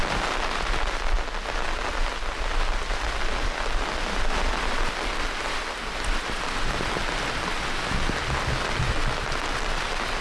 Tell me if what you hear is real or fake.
real